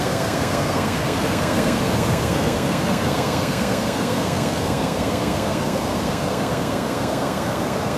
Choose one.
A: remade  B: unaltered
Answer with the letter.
A